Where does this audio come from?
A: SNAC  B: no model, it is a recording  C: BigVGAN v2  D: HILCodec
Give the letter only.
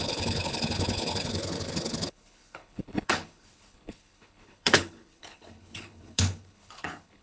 D